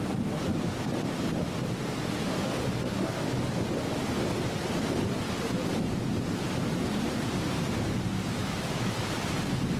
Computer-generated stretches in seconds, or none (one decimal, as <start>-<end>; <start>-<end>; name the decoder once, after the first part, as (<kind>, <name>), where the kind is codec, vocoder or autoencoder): 8.4-9.0 (autoencoder, DAC-VAE)